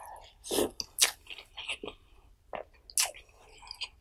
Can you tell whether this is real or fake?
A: real